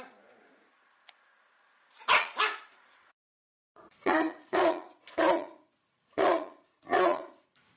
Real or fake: fake